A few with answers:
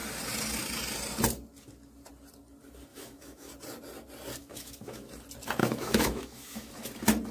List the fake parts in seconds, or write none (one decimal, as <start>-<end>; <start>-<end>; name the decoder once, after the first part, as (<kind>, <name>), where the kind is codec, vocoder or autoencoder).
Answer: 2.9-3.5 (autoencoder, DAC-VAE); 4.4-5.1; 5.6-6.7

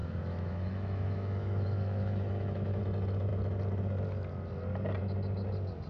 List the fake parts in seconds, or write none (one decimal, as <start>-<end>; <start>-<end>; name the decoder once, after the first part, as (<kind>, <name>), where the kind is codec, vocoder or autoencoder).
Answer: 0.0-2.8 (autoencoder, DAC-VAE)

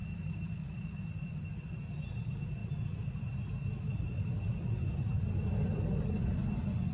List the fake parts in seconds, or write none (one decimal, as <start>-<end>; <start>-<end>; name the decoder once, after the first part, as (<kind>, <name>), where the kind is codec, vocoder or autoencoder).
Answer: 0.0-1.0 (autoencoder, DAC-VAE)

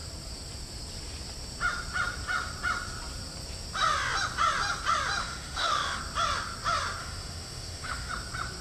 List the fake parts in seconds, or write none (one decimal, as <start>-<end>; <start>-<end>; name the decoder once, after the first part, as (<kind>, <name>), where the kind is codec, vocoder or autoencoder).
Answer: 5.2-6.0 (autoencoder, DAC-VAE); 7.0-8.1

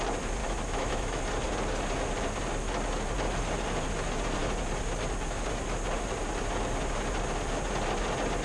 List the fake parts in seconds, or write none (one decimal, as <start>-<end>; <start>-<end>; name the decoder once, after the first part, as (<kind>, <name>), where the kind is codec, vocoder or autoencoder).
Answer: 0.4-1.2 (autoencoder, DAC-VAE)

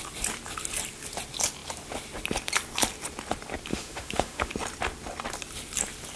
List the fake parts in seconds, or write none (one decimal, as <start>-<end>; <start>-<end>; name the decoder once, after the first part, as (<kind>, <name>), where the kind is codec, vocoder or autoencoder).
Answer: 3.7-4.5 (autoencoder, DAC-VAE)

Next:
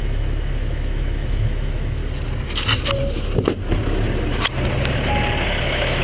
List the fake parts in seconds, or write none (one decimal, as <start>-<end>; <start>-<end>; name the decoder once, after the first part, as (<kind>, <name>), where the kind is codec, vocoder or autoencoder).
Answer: 0.0-2.0 (autoencoder, DAC-VAE); 5.6-6.0

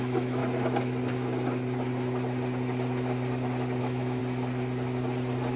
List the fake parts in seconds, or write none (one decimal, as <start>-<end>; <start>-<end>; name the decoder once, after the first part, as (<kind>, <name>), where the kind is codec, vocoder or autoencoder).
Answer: 0.0-0.4 (autoencoder, DAC-VAE); 3.8-4.2